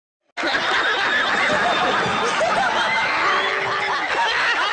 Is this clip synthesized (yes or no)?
no